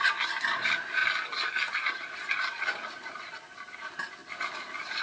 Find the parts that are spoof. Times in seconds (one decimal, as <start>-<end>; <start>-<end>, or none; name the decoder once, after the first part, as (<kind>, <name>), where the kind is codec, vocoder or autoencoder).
0.0-1.0 (vocoder, BigVGAN v2); 1.6-4.2